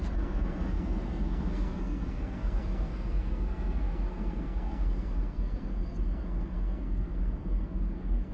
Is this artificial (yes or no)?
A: yes